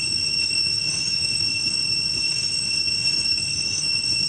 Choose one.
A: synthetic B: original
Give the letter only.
A